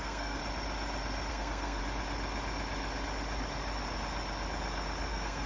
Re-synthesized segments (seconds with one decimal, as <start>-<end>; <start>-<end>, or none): 0.0-0.4; 1.3-1.8; 5.1-5.5